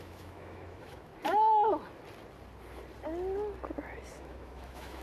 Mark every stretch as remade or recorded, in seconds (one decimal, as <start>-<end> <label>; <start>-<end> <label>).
0.0-1.1 remade; 1.1-4.1 recorded; 4.1-5.0 remade